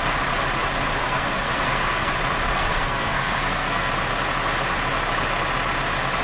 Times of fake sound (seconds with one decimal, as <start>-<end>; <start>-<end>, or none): 1.0-2.1; 2.5-3.9